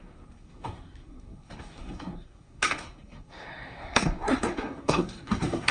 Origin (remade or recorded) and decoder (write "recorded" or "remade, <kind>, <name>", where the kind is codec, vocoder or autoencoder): remade, codec, SNAC